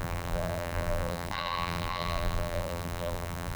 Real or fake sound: fake